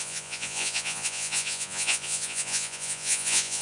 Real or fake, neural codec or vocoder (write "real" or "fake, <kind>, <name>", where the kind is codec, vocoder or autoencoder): fake, vocoder, Vocos